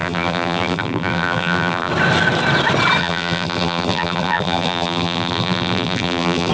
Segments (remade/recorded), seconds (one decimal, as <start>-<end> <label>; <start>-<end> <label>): 0.0-1.9 remade; 1.9-3.0 recorded; 3.0-6.5 remade